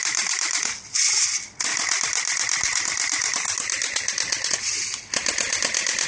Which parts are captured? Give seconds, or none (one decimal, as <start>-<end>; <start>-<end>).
0.7-6.1